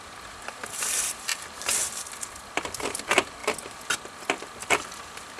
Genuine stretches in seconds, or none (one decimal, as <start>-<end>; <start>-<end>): 1.3-2.6; 3.4-4.2

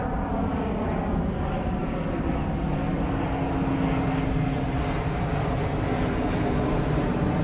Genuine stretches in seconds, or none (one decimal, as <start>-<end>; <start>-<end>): 0.0-7.4